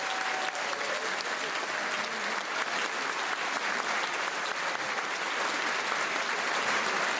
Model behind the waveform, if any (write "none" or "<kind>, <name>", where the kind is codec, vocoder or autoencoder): none